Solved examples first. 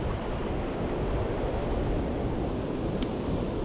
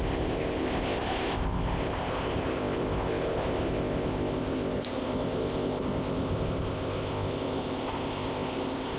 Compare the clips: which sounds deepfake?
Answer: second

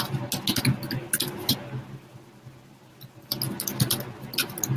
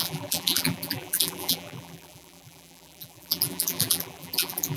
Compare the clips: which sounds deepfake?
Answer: second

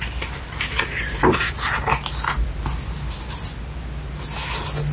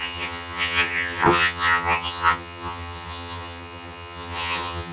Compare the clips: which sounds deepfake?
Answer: second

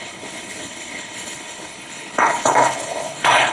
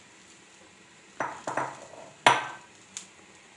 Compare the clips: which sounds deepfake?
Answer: first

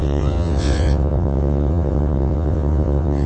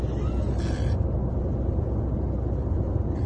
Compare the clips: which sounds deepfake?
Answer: first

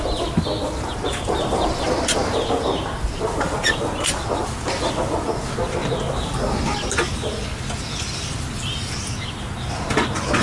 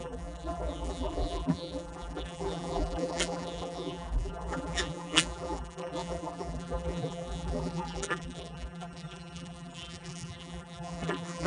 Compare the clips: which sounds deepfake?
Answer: second